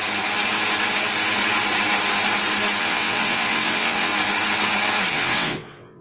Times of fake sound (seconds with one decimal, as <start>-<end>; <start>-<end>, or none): 2.8-4.1; 5.1-6.0